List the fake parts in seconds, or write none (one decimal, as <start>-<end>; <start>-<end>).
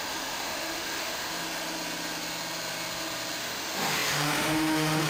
0.0-1.3; 3.4-5.1